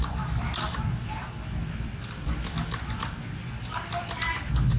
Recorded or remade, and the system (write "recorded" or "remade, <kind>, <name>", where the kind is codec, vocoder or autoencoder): remade, vocoder, BigVGAN v2